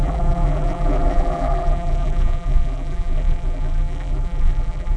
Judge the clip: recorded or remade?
remade